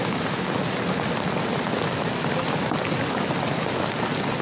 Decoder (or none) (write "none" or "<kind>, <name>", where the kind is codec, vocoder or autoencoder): none